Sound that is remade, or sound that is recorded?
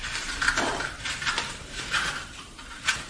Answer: remade